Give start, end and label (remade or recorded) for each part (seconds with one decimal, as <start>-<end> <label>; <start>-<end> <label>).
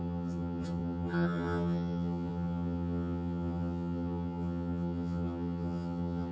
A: 0.0-6.3 remade